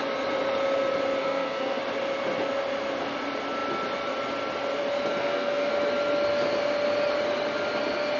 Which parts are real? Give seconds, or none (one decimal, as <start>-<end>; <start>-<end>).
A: 0.0-1.2; 1.8-5.2; 5.7-8.2